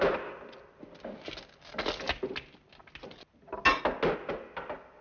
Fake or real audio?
real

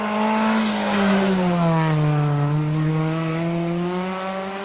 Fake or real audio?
real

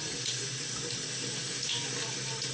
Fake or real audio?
real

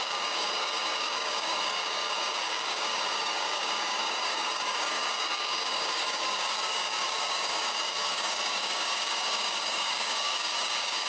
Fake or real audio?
fake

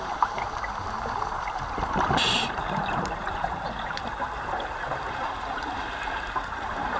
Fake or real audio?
fake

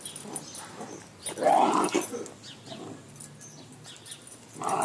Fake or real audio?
real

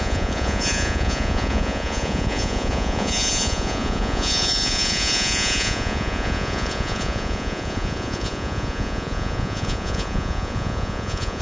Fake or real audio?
fake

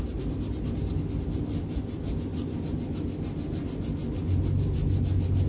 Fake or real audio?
real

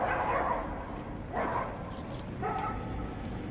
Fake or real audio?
real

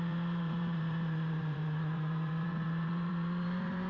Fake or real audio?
fake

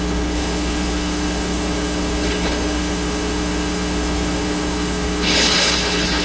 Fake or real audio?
fake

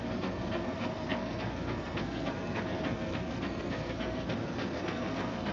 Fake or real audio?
fake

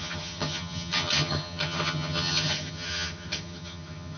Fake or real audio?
fake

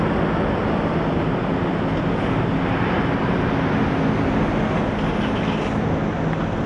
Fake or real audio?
real